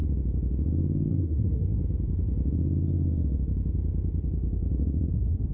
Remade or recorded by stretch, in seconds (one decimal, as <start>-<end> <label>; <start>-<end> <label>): 0.0-1.1 recorded; 1.1-1.8 remade; 1.8-5.1 recorded; 5.1-5.5 remade